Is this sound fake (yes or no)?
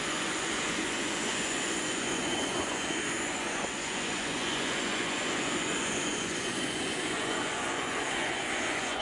yes